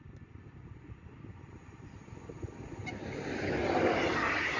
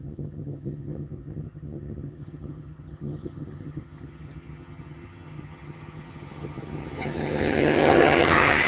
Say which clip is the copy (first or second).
second